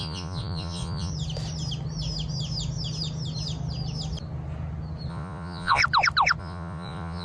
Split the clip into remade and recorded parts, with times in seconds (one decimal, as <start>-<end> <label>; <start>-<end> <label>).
0.0-1.1 remade; 1.1-5.1 recorded; 5.1-5.8 remade; 5.8-6.4 recorded; 6.4-7.2 remade